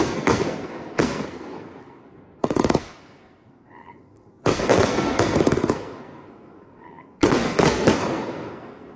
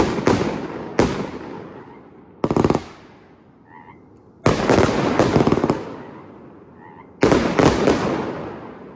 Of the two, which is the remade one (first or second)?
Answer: first